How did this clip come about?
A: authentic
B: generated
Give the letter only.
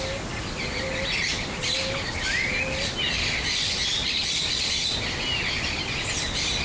A